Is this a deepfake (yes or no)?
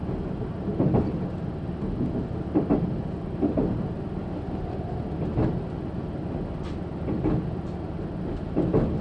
no